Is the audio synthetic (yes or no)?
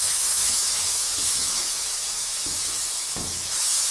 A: yes